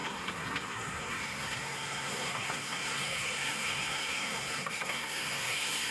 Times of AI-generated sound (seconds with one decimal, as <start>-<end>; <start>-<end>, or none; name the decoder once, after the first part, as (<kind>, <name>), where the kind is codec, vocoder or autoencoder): 0.0-5.9 (codec, SNAC)